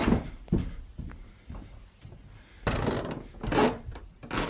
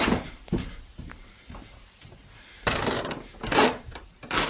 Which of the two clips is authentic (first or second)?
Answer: first